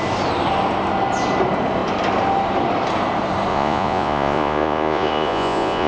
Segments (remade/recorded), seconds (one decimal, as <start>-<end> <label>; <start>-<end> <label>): 0.0-3.5 recorded; 3.5-5.9 remade